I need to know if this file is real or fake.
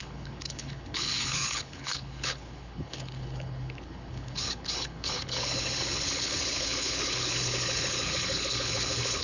fake